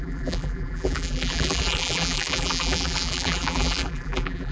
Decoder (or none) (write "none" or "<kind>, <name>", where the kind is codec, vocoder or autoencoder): vocoder, BigVGAN v2